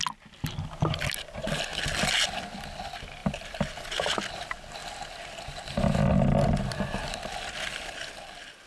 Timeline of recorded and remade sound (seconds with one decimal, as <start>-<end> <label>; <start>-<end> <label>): 0.0-3.2 recorded; 3.2-3.7 remade; 3.7-8.7 recorded